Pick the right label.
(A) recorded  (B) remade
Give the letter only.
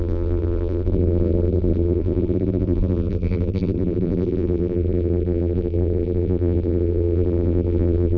B